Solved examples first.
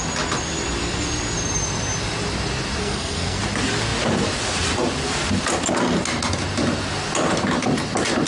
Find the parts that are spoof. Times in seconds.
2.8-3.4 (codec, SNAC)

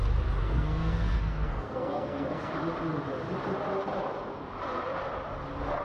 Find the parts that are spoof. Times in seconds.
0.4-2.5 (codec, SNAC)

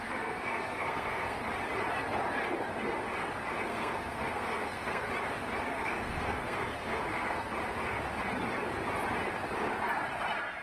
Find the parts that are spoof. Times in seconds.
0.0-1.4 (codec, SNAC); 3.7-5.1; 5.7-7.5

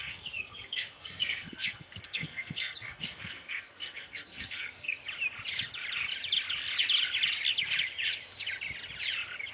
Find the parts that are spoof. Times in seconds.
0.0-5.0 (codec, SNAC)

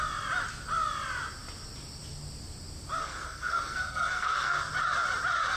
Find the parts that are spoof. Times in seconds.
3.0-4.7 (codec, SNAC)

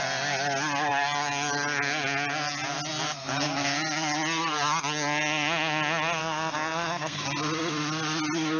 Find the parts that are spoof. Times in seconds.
6.2-7.2 (codec, SNAC)

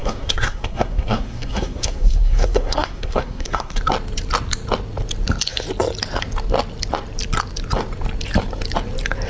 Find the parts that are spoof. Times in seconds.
0.0-3.8 (codec, SNAC)

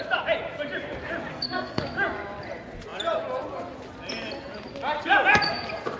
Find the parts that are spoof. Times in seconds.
1.3-1.8 (codec, SNAC)